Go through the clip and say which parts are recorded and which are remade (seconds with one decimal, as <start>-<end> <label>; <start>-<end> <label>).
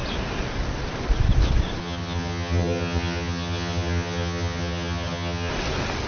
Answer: 0.0-1.8 recorded; 1.8-5.5 remade; 5.5-6.1 recorded